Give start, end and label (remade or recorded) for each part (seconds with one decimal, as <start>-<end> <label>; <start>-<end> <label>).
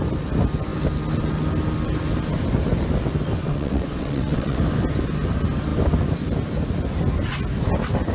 0.0-3.4 recorded; 3.4-4.6 remade; 4.6-8.1 recorded